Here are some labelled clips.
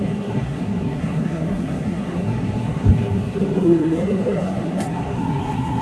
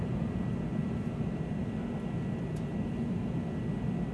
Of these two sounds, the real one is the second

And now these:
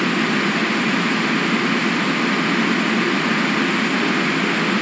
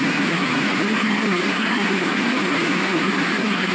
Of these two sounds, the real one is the first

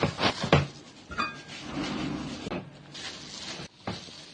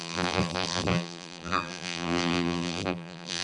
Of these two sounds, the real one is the first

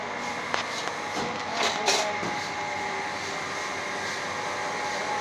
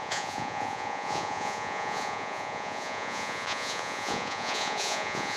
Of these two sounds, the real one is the first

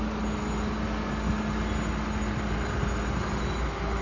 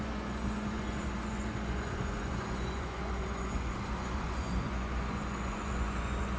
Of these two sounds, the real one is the first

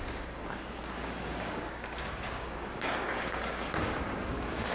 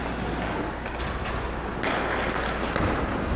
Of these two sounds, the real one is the second